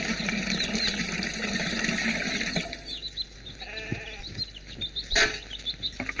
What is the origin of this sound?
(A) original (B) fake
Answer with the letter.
A